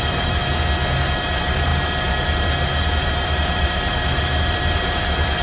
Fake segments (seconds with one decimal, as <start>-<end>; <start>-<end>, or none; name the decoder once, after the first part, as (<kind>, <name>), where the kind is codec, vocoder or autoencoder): 0.0-0.4 (vocoder, BigVGAN v2); 1.0-5.4